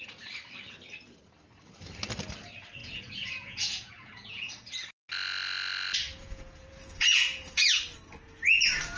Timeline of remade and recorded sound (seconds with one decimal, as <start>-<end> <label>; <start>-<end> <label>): 0.0-2.8 recorded; 2.8-4.7 remade; 4.7-6.0 recorded; 6.0-7.8 remade; 7.8-9.0 recorded